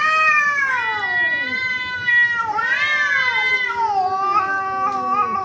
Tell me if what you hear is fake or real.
real